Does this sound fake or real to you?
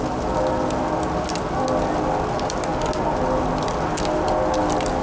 real